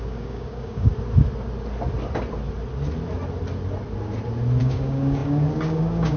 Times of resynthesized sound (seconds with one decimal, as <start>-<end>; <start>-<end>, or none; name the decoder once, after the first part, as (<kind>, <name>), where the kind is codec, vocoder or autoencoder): 0.0-0.9 (codec, DAC); 4.6-6.2